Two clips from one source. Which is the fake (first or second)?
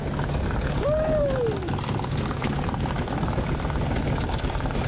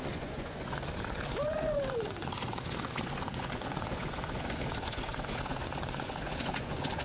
second